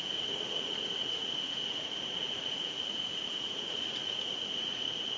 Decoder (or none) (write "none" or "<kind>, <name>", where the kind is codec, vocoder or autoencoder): vocoder, Vocos